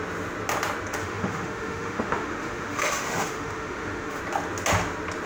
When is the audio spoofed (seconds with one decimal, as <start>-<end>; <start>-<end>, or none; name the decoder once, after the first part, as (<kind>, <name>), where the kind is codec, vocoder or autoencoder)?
1.0-4.2 (autoencoder, DAC-VAE)